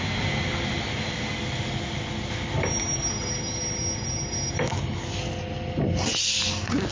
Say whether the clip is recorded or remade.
recorded